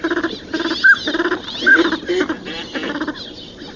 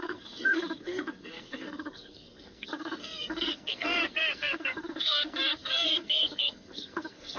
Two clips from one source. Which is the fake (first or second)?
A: second